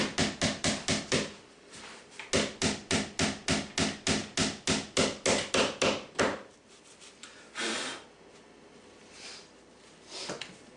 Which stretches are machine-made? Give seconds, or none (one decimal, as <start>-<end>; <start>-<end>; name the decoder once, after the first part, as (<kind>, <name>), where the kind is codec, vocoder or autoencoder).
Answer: none